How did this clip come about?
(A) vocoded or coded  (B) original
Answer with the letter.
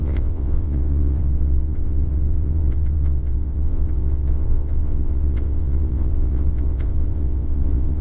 A